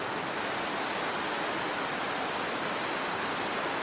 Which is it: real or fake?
real